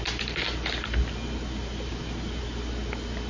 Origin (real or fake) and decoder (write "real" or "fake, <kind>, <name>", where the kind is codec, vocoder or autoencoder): real